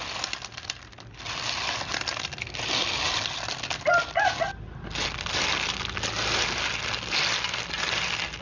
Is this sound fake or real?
real